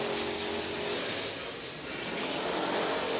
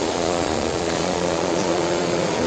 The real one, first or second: first